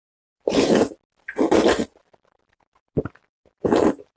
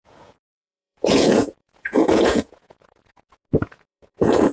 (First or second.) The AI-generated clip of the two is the second